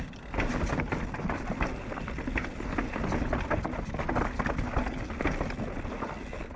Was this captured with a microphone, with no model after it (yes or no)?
yes